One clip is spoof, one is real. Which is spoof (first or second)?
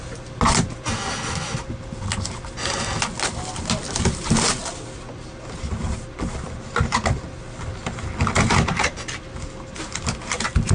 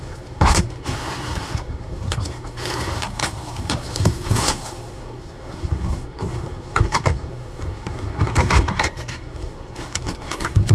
second